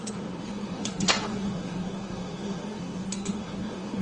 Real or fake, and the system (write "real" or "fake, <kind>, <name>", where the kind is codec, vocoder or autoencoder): fake, codec, SNAC